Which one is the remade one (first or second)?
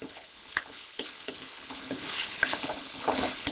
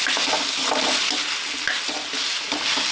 first